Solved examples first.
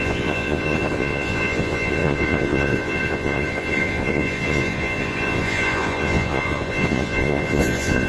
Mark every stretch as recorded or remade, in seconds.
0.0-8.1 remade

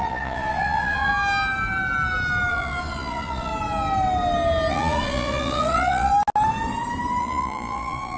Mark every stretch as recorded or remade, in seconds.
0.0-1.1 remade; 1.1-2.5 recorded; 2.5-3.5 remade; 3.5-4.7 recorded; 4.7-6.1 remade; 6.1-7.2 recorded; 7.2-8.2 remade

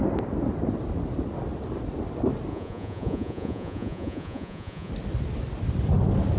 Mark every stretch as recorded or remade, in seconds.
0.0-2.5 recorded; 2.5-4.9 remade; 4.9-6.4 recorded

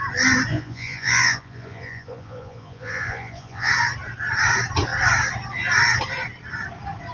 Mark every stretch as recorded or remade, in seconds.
0.0-0.5 recorded; 0.5-3.7 remade; 3.7-7.1 recorded

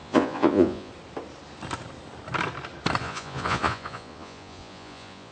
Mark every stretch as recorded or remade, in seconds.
0.0-0.9 remade; 0.9-3.0 recorded; 3.0-5.3 remade

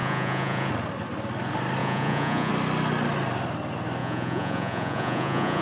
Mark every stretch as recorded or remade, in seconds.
0.0-0.7 remade; 0.7-1.8 recorded; 1.8-2.5 remade; 2.5-4.0 recorded; 4.0-5.6 remade